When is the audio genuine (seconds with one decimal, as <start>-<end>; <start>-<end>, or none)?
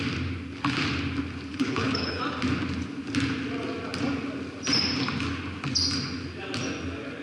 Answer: 0.0-1.5; 2.2-7.2